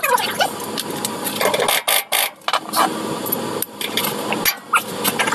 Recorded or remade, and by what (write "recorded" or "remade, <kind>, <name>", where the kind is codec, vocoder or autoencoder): recorded